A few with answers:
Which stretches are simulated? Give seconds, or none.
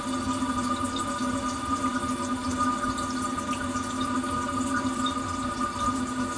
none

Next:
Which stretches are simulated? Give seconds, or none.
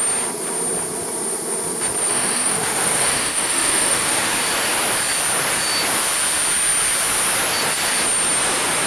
2.1-4.2 (autoencoder, DAC-VAE)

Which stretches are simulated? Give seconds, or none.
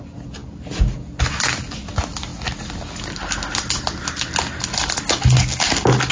none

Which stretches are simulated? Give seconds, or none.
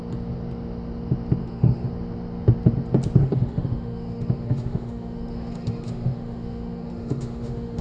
1.4-1.9 (autoencoder, DAC-VAE); 3.2-7.8